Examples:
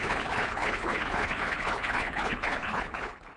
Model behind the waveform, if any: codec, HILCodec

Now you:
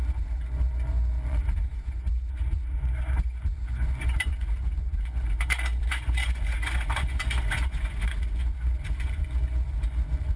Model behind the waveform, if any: vocoder, Vocos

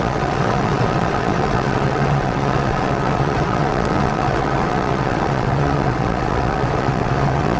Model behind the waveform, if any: vocoder, WaveNeXt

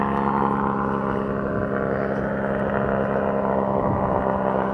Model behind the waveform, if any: none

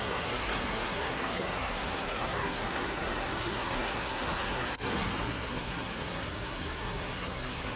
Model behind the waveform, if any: codec, SNAC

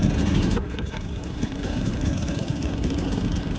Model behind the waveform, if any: codec, SNAC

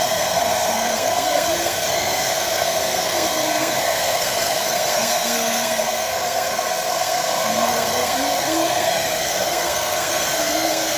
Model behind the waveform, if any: codec, SNAC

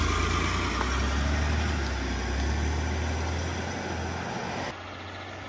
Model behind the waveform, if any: none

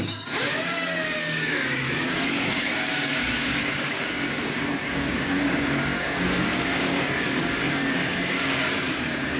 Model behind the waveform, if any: codec, DAC